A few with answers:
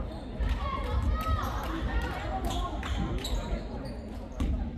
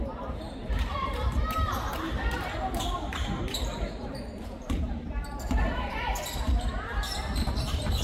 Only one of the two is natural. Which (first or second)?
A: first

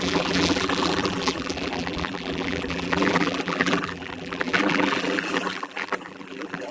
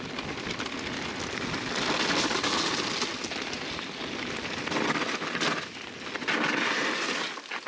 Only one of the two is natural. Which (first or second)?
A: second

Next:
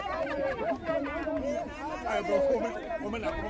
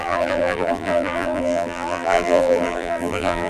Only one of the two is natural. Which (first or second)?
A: first